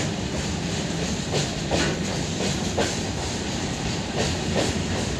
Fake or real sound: fake